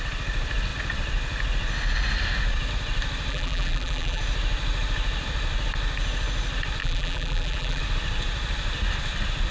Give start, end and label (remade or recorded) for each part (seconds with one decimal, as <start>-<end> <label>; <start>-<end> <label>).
0.0-3.3 recorded; 3.3-4.2 remade; 4.2-6.8 recorded; 6.8-7.8 remade; 7.8-9.5 recorded